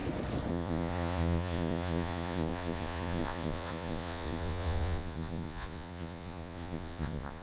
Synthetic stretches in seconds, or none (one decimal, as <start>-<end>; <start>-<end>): 0.5-7.4